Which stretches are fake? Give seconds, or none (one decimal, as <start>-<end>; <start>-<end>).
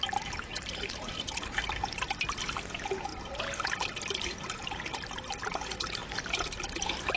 0.5-1.1